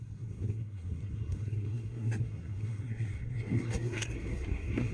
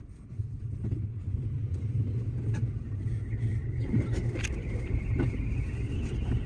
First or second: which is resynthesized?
first